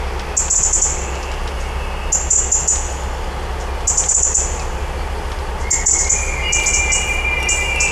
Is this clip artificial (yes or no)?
no